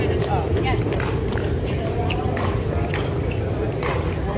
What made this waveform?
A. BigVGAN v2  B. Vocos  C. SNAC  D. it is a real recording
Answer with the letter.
D